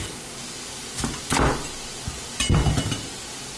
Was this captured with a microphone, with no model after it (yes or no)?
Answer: yes